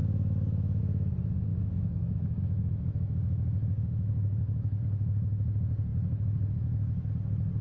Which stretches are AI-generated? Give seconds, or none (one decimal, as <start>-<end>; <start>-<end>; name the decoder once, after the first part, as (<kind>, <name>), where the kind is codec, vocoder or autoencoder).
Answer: 0.0-0.8 (autoencoder, DAC-VAE); 1.5-4.8